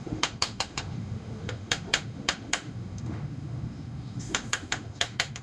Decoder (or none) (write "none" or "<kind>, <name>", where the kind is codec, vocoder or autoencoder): autoencoder, DAC-VAE